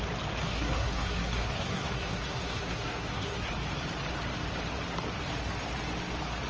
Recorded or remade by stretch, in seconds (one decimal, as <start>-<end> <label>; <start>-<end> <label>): 0.0-0.4 recorded; 0.4-3.5 remade; 3.5-6.5 recorded